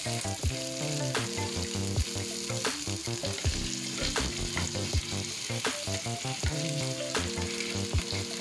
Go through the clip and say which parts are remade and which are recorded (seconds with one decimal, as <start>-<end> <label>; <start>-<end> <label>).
0.0-8.4 recorded

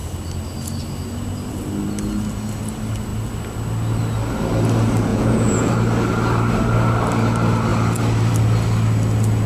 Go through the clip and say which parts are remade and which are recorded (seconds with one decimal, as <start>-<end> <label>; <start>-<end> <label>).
0.0-5.1 recorded; 5.1-5.7 remade; 5.7-9.5 recorded

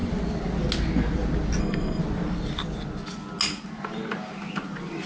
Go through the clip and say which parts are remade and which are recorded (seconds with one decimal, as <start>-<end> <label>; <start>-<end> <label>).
0.0-1.6 recorded; 1.6-2.0 remade; 2.0-5.1 recorded

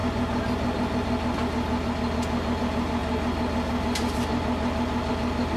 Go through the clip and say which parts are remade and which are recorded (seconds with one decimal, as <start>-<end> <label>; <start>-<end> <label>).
0.0-5.6 recorded